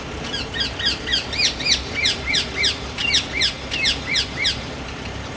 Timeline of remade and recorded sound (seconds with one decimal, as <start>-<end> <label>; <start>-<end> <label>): 0.0-3.0 remade; 3.0-4.3 recorded; 4.3-5.4 remade